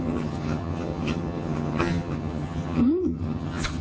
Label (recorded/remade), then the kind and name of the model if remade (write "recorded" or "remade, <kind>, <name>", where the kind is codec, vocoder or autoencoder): remade, vocoder, HiFi-GAN